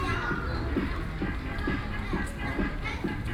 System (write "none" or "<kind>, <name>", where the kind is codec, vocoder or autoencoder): none